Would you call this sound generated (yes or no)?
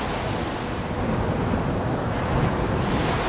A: no